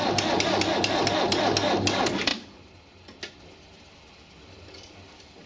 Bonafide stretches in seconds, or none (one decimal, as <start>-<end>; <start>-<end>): 0.0-5.5